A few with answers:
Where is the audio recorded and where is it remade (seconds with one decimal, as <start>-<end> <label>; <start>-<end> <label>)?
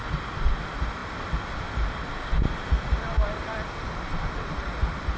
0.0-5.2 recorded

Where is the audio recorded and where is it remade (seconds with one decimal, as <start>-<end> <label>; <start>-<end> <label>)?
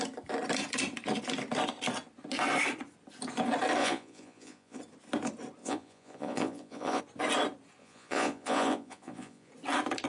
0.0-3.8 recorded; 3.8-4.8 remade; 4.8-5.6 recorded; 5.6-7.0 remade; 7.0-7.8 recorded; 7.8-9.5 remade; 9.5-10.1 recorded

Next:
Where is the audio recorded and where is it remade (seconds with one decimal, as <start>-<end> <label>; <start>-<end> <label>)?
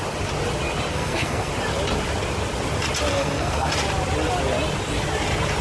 0.0-0.9 recorded; 0.9-1.5 remade; 1.5-3.1 recorded; 3.1-3.7 remade; 3.7-5.6 recorded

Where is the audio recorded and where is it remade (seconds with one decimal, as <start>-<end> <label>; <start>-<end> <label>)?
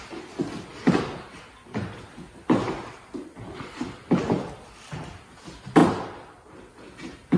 0.0-7.4 recorded